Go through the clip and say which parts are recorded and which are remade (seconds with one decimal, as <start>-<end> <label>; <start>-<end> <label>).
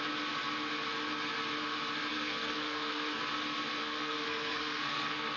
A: 0.0-2.1 recorded; 2.1-3.2 remade; 3.2-3.8 recorded; 3.8-5.4 remade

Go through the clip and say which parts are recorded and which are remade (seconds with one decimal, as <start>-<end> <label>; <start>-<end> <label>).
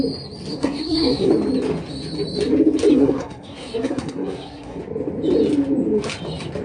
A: 0.0-0.5 recorded; 0.5-1.3 remade; 1.3-2.9 recorded; 2.9-4.8 remade; 4.8-6.6 recorded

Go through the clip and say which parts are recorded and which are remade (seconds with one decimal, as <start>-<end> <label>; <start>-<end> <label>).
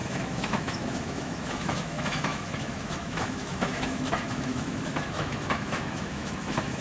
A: 0.0-6.8 remade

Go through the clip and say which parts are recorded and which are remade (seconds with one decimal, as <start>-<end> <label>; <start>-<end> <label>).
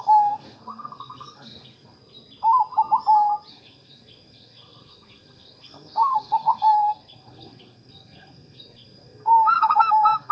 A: 0.0-2.0 remade; 2.0-3.5 recorded; 3.5-10.3 remade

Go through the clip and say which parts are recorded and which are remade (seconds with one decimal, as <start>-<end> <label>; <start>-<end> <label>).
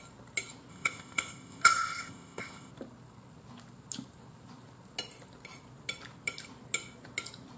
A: 0.0-0.7 recorded; 0.7-2.7 remade; 2.7-7.6 recorded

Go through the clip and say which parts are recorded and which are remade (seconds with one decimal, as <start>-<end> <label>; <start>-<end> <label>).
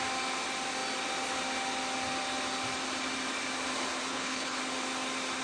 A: 0.0-4.1 recorded; 4.1-4.6 remade; 4.6-5.4 recorded